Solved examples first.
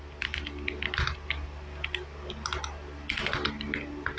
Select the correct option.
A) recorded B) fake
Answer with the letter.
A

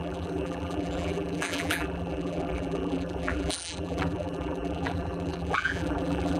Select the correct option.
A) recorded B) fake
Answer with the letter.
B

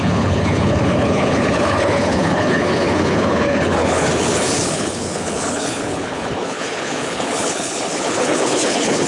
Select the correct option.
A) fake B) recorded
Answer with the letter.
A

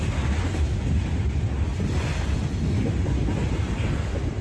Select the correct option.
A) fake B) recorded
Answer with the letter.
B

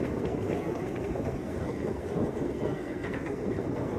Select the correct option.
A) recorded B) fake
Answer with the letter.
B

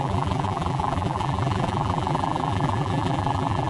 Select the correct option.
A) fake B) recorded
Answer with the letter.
A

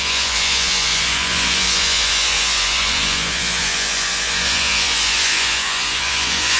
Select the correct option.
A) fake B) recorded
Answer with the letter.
A